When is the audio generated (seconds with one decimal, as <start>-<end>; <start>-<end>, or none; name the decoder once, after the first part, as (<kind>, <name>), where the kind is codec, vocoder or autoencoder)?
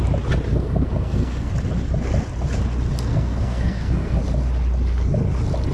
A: 0.5-1.5 (codec, SNAC); 3.1-4.2